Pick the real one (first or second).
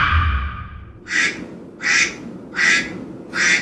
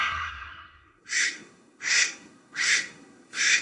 first